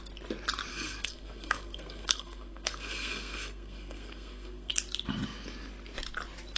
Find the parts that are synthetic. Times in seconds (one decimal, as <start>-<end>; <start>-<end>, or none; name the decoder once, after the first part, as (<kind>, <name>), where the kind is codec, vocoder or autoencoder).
0.7-4.7 (codec, SNAC)